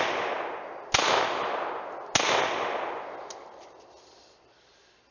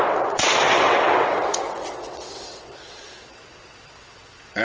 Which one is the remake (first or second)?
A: second